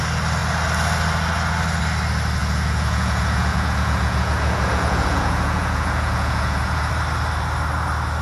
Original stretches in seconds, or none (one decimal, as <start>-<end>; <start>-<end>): 0.0-2.4; 6.9-8.2